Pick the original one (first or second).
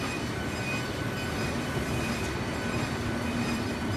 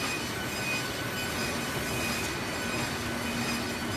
second